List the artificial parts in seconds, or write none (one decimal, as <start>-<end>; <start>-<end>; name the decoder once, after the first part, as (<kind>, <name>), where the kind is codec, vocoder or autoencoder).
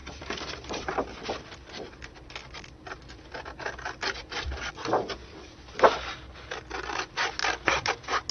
0.0-4.7 (vocoder, BigVGAN v2); 5.2-6.2; 7.4-7.9